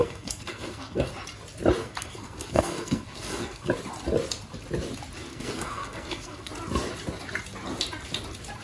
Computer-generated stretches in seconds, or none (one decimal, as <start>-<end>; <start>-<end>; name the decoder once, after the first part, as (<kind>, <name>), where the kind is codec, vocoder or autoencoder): 0.0-1.1 (codec, SNAC); 1.8-3.7; 5.3-6.5